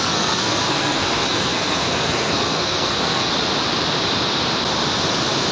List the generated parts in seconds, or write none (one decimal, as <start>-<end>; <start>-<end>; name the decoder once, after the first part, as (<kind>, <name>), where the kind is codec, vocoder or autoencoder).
0.0-3.3 (codec, SNAC)